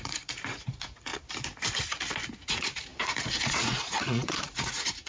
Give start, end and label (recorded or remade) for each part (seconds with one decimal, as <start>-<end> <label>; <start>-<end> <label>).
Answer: 0.0-1.1 remade; 1.1-2.4 recorded; 2.4-5.1 remade